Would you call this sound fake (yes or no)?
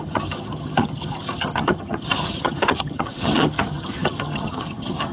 yes